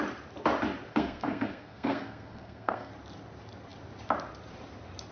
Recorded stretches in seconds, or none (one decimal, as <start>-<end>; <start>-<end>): 0.0-0.9; 2.9-5.1